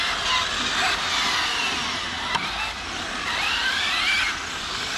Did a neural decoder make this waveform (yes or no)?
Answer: no